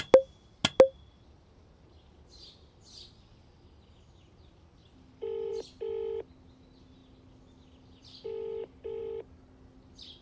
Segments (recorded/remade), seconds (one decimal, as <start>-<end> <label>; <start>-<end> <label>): 0.0-10.2 recorded